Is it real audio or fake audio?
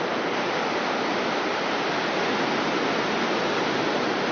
real